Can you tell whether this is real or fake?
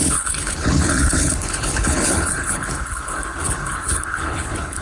fake